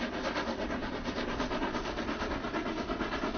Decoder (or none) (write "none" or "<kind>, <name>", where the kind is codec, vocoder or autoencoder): none